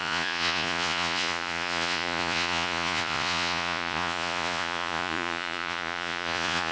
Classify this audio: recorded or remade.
remade